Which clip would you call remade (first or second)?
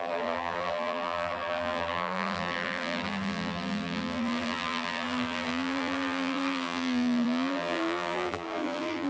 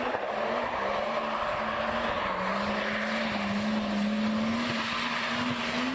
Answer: first